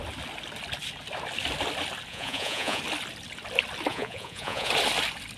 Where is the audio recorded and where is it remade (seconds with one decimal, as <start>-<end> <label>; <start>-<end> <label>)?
0.0-2.1 recorded; 2.1-2.8 remade; 2.8-3.9 recorded; 3.9-4.7 remade; 4.7-5.4 recorded